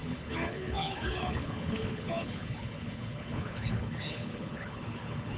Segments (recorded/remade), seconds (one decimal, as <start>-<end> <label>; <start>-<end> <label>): 0.0-5.4 remade